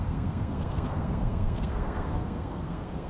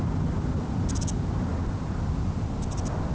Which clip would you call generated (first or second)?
first